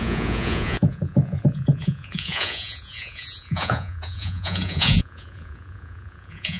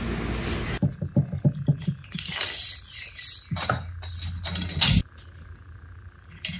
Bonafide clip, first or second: second